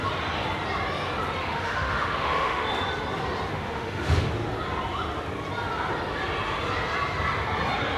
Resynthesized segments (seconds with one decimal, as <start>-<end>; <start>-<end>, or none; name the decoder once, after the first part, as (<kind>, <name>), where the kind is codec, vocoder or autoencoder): 1.4-2.7 (autoencoder, DAC-VAE); 3.5-4.3